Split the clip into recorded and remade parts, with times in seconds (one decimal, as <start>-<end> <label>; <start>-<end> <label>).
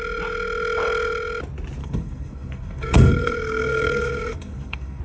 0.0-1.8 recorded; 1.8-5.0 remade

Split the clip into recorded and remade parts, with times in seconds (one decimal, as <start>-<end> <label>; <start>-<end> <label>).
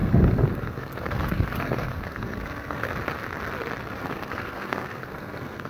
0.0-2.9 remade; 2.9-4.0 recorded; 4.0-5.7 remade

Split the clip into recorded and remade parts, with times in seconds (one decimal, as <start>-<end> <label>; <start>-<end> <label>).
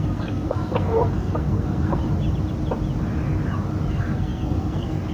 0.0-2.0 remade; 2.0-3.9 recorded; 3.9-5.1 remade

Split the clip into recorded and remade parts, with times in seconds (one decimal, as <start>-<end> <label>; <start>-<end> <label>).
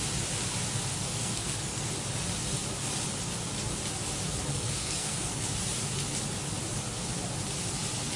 0.0-1.0 recorded; 1.0-1.9 remade; 1.9-4.5 recorded; 4.5-5.4 remade; 5.4-8.2 recorded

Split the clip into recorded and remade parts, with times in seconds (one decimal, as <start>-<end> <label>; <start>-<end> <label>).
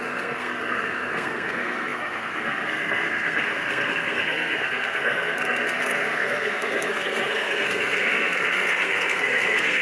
0.0-9.8 remade